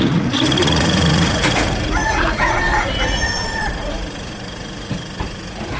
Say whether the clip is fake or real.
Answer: fake